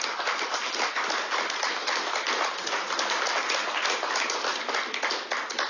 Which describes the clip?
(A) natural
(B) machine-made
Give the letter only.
A